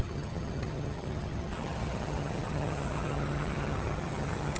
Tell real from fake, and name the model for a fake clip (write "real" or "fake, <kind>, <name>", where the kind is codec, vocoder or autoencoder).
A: fake, vocoder, HiFi-GAN